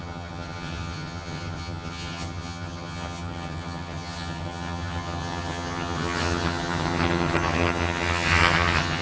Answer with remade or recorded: remade